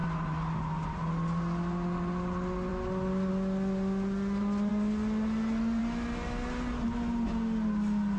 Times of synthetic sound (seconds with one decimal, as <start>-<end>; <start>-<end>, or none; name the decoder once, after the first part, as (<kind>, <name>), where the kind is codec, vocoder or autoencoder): none

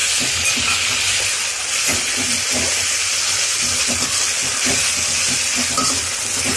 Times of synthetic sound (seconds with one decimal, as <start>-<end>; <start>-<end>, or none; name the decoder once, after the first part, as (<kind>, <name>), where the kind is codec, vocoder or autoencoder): none

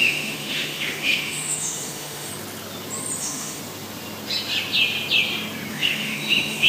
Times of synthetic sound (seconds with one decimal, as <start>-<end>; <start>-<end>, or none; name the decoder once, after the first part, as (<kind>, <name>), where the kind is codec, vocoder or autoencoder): 0.0-2.3 (autoencoder, DAC-VAE); 3.2-3.6; 5.7-6.7